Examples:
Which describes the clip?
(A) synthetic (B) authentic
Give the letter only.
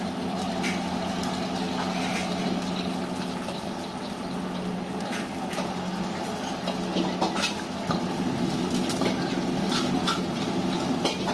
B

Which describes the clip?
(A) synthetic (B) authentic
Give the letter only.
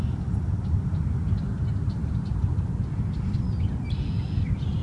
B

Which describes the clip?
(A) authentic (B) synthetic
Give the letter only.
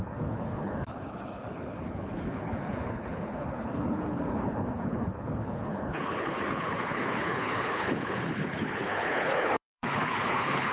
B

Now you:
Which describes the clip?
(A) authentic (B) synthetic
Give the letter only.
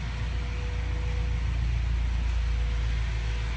A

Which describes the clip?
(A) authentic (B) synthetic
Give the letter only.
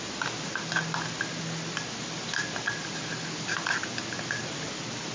A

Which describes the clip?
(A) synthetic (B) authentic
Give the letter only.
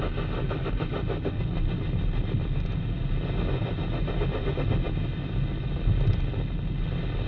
B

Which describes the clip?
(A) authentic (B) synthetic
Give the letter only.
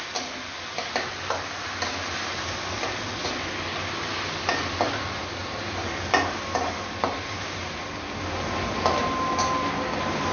A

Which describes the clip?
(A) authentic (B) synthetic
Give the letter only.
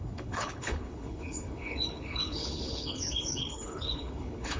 B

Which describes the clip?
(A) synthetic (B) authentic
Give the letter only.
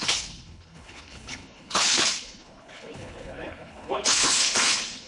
A